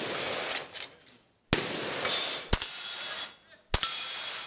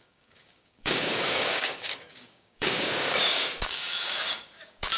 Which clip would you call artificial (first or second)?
second